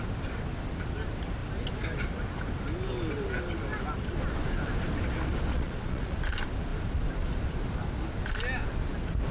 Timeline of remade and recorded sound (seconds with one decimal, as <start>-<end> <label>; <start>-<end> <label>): 0.0-5.5 recorded; 5.5-6.2 remade; 6.2-9.3 recorded